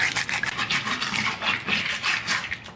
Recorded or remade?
recorded